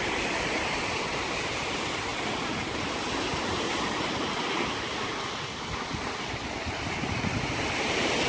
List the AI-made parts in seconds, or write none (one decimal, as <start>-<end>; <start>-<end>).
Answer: none